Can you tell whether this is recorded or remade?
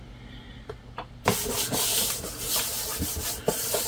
recorded